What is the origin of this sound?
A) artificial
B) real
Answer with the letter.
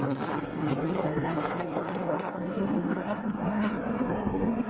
A